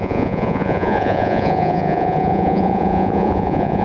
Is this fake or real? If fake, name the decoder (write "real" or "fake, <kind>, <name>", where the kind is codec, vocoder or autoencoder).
fake, vocoder, Vocos